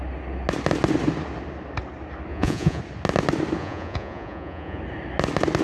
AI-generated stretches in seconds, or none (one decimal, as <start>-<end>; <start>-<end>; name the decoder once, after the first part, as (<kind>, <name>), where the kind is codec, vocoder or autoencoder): 2.3-2.8 (vocoder, Vocos); 3.6-4.8